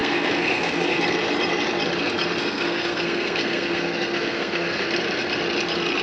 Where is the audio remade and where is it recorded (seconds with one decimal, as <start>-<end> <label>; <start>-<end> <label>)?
0.0-1.0 remade; 1.0-2.4 recorded; 2.4-4.9 remade; 4.9-6.0 recorded